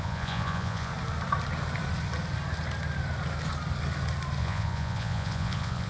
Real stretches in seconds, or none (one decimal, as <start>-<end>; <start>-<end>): 0.9-4.4